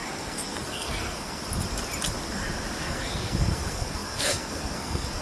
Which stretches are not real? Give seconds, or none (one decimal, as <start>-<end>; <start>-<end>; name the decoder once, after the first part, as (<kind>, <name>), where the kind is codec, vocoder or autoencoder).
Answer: 0.0-1.4 (codec, SNAC); 2.8-5.2